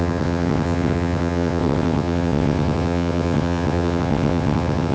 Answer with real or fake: fake